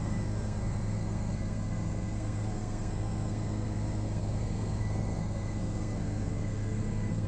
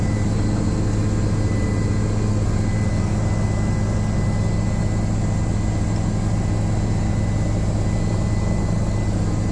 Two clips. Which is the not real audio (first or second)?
first